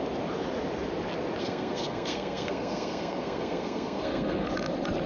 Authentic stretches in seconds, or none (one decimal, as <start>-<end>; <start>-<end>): 0.0-1.4; 4.5-5.1